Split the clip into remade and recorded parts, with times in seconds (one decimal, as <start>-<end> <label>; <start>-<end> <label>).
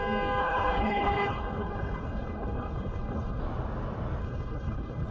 0.0-0.4 recorded; 0.4-3.4 remade; 3.4-4.2 recorded; 4.2-5.1 remade